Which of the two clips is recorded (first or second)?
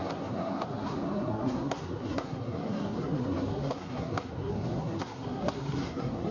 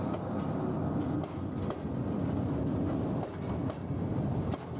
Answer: second